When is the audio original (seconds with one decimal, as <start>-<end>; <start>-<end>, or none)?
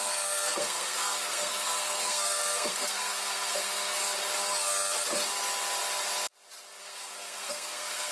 4.0-6.8